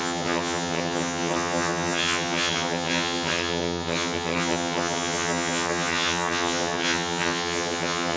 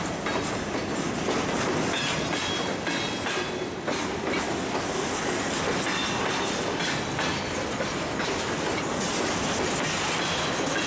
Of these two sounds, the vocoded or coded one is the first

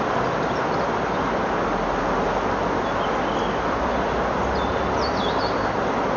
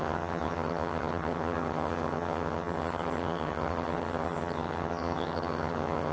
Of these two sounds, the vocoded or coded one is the second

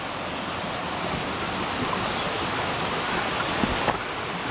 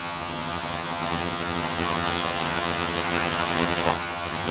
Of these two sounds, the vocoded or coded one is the second